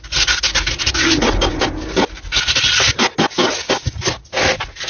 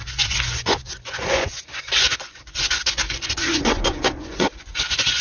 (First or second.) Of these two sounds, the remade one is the second